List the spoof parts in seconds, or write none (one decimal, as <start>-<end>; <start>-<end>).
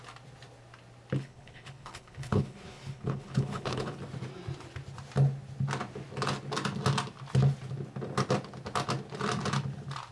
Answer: 1.2-4.0